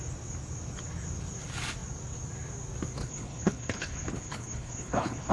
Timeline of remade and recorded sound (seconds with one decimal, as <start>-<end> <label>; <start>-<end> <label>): 0.0-3.0 recorded; 3.0-5.3 remade